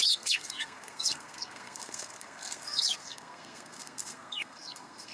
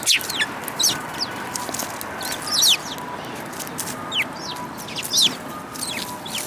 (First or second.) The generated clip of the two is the first